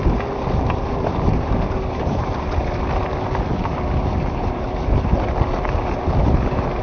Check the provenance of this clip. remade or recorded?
recorded